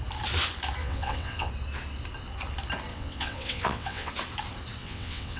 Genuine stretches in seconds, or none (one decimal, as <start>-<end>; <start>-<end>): 0.0-0.8; 1.5-2.9; 4.1-4.8